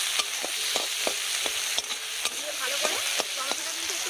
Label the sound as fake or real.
real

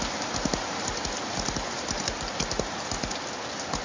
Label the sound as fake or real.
real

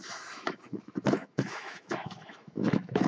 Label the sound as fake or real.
fake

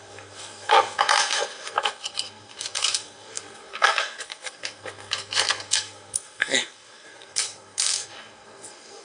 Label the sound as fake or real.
fake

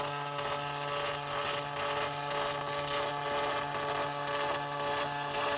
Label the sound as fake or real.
real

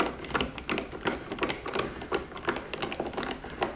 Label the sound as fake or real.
real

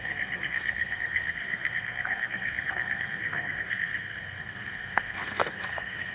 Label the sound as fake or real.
fake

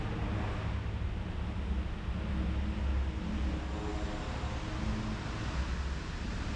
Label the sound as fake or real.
real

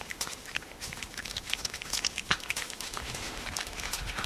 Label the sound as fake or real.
fake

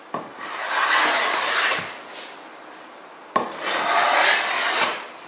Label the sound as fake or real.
real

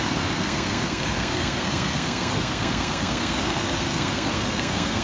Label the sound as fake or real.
fake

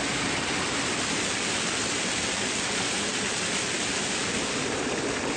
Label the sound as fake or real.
real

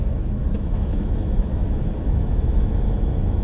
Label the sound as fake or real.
fake